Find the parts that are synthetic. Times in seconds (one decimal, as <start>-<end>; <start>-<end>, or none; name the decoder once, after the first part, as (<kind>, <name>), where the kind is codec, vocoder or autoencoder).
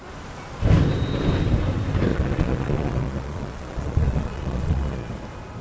2.1-5.1 (vocoder, Vocos)